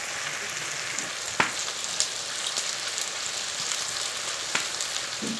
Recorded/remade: recorded